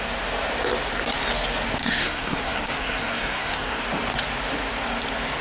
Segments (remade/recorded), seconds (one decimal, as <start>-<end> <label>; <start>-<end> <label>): 0.0-1.8 recorded; 1.8-3.8 remade; 3.8-5.4 recorded